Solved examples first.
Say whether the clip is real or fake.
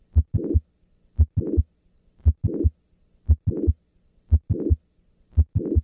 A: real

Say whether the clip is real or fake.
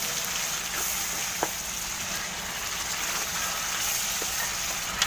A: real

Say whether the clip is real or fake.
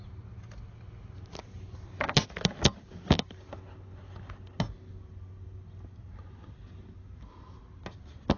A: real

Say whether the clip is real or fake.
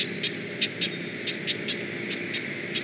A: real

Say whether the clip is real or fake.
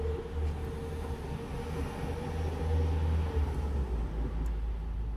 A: real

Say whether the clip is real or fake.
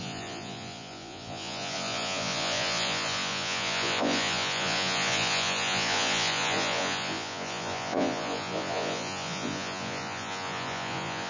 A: fake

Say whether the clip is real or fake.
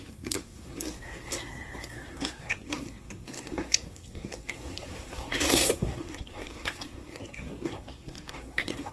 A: fake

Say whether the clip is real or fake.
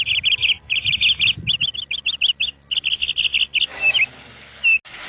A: real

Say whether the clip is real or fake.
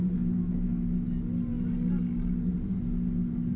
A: real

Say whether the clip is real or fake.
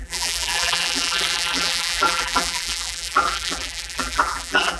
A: fake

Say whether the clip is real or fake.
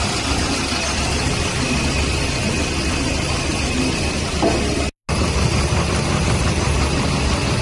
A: real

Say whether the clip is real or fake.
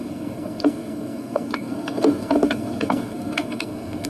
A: fake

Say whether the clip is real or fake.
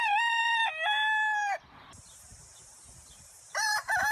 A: fake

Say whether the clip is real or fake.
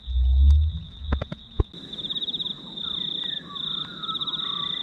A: real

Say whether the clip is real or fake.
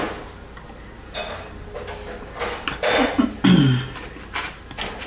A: real